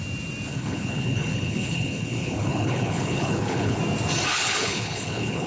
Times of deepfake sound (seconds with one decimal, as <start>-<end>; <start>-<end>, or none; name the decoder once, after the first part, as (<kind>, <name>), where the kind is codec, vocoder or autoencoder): 0.5-3.8 (codec, HILCodec); 4.3-5.5